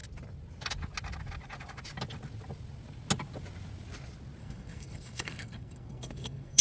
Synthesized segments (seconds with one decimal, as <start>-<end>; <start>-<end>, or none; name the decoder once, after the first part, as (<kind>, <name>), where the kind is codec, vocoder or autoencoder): 4.4-6.6 (codec, SNAC)